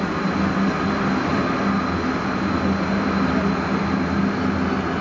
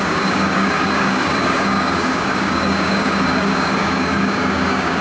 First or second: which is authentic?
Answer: first